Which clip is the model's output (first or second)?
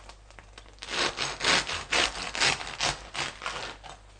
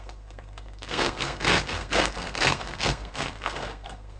second